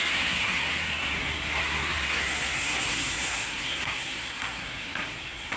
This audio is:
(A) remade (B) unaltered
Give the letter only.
A